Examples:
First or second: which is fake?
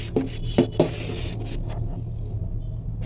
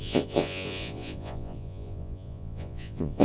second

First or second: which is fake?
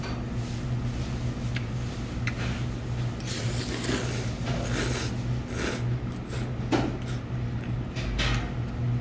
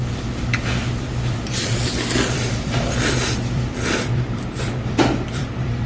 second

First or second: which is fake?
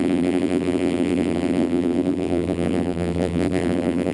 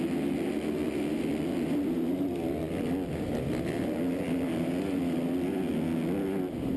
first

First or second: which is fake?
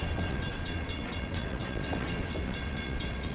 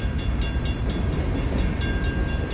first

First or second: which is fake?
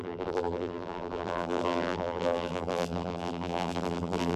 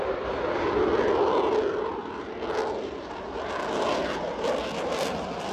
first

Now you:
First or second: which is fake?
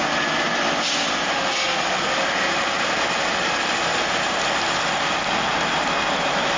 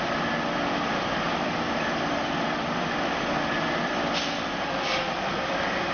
second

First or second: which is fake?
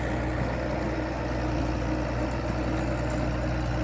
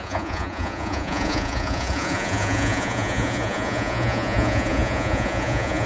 second